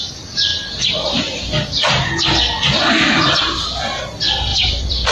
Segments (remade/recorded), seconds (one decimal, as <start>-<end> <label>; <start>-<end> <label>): 0.0-4.5 recorded; 4.5-5.1 remade